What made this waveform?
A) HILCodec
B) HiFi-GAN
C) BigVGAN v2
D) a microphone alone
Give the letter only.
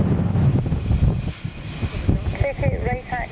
D